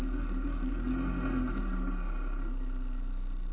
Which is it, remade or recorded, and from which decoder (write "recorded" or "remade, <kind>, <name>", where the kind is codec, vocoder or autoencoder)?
recorded